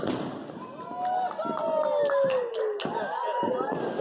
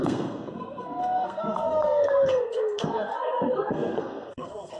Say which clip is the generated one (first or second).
second